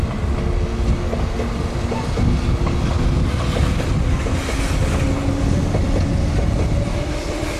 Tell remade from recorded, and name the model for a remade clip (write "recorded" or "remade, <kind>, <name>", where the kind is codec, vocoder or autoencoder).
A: recorded